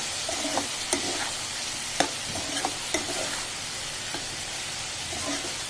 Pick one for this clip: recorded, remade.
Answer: recorded